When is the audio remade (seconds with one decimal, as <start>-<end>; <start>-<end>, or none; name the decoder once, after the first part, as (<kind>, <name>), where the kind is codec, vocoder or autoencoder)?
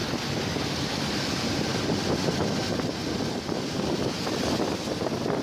none